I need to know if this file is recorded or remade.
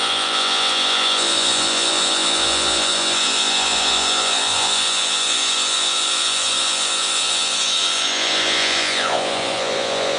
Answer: remade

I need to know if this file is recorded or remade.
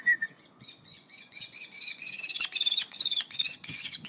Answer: remade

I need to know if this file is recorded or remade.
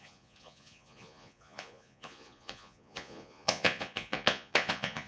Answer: remade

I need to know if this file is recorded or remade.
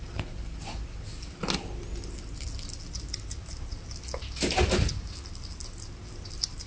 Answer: recorded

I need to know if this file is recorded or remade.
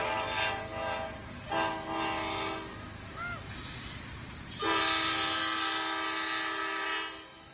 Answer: recorded